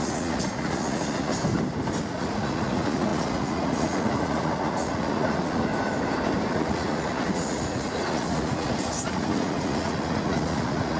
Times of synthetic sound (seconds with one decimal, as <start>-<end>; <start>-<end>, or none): 0.0-1.3; 2.0-5.7; 6.5-11.0